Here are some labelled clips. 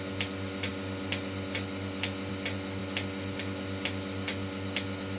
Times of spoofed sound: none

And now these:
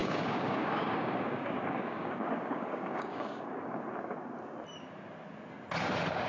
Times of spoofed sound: 0.0-3.8 (codec, DAC)

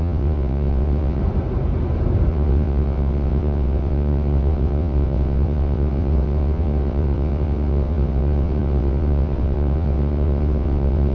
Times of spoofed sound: 0.0-1.2 (vocoder, WaveNeXt); 2.3-11.1